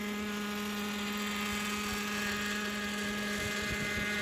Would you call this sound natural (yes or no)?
yes